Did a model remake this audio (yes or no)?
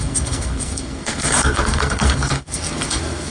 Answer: yes